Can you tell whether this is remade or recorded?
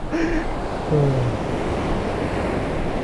recorded